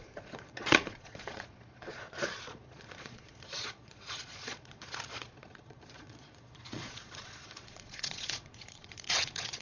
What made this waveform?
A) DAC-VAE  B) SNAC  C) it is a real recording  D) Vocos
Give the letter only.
D